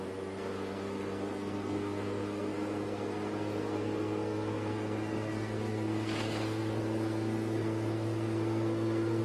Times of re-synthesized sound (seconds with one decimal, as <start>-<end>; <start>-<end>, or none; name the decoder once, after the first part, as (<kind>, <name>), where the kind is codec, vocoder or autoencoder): 0.0-9.2 (codec, SNAC)